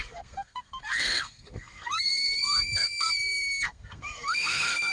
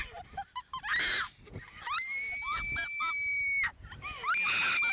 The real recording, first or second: second